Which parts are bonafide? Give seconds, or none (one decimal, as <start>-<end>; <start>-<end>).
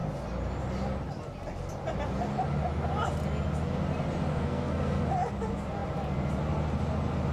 0.0-4.3; 5.0-7.3